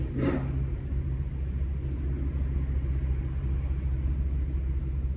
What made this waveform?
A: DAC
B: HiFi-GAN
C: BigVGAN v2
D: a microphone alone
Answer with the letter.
D